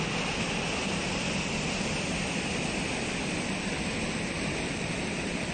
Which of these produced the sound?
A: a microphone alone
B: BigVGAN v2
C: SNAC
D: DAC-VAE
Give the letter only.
A